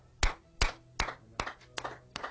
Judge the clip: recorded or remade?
recorded